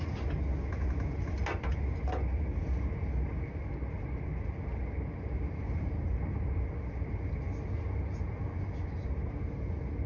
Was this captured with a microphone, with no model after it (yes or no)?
yes